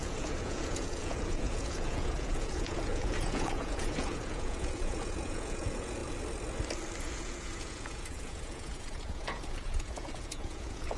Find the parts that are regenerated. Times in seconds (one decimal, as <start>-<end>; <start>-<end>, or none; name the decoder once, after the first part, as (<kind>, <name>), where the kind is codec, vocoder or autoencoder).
0.0-6.0 (vocoder, Vocos); 7.0-11.0

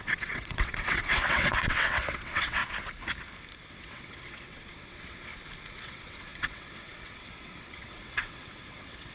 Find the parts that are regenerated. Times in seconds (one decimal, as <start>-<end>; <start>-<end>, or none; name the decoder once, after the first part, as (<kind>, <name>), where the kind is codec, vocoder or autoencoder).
0.0-2.6 (vocoder, WaveNeXt); 3.7-5.3; 5.8-9.1

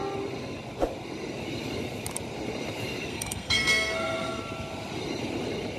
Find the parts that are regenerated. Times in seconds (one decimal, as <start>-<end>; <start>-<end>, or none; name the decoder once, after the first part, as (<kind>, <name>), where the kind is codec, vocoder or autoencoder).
3.1-4.4 (codec, SNAC)

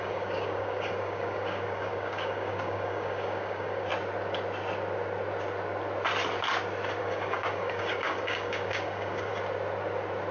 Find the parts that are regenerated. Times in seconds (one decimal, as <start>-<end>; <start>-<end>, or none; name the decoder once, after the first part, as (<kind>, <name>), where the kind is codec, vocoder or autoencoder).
0.0-3.9 (codec, DAC); 7.0-9.3

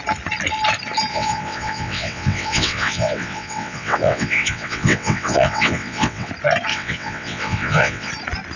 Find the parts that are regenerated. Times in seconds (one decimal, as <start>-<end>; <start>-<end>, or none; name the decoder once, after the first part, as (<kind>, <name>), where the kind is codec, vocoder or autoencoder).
1.1-6.3 (vocoder, WaveNeXt); 6.7-8.1

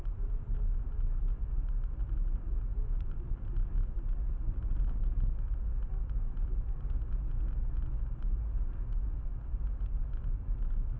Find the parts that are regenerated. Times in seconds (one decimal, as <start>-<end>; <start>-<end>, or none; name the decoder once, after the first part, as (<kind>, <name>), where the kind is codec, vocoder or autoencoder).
2.7-4.8 (vocoder, BigVGAN v2); 9.3-10.2